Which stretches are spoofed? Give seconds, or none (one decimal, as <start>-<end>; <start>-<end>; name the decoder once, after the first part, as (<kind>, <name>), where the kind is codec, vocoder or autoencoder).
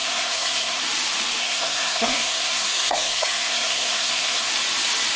0.0-0.8 (codec, SNAC); 1.4-4.5